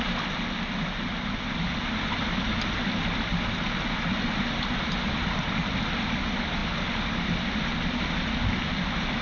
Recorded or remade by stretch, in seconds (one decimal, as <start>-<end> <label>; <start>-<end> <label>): 0.0-9.2 recorded